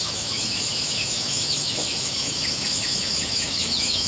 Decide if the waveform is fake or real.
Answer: fake